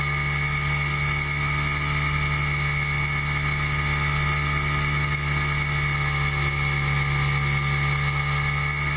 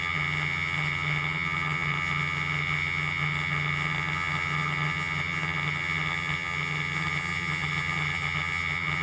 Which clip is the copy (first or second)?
second